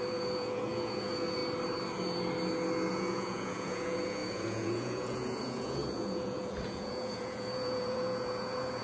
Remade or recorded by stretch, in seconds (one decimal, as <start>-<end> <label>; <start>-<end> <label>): 0.0-1.4 remade; 1.4-2.9 recorded; 2.9-8.8 remade